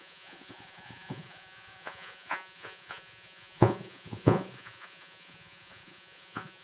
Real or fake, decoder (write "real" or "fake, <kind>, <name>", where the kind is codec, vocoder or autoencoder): fake, vocoder, Vocos